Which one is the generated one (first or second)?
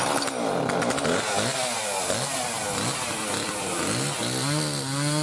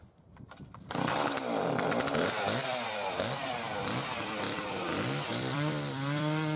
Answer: second